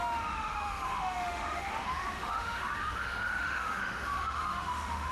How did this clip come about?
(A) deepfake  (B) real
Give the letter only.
A